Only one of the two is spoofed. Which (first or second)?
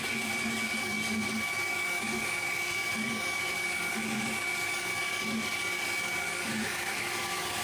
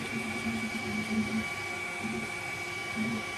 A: first